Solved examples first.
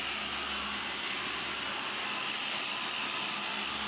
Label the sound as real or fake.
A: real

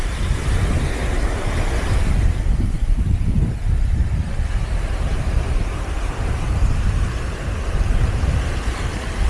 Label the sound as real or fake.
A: fake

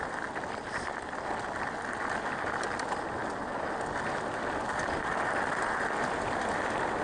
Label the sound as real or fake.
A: real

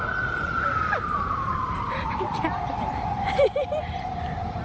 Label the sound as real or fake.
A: fake